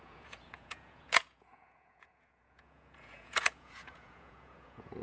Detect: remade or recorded remade